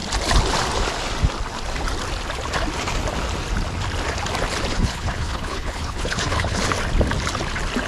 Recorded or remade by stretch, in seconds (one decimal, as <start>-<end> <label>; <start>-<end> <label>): 0.0-4.7 recorded; 4.7-6.6 remade; 6.6-7.9 recorded